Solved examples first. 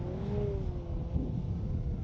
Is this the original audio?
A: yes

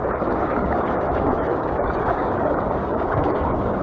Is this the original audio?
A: no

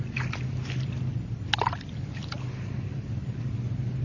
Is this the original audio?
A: no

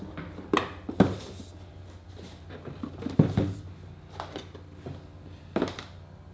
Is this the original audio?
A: yes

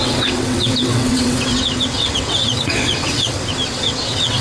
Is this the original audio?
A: no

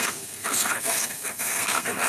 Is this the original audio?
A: no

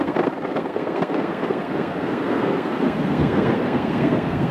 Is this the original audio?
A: no